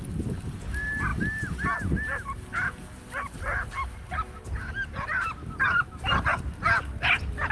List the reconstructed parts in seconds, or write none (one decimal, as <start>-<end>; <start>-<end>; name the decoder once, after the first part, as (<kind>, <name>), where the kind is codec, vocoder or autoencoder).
none